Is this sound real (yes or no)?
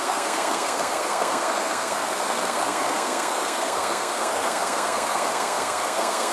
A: no